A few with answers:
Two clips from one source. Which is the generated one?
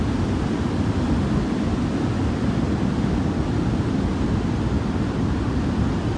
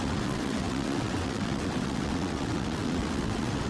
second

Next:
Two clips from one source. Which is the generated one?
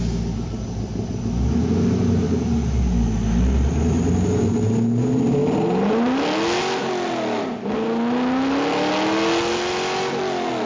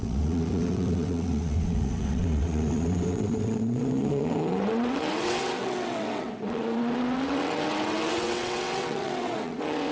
second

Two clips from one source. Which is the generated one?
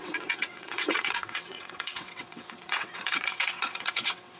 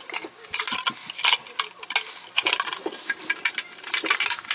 first